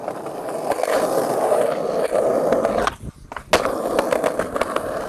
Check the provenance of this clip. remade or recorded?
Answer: recorded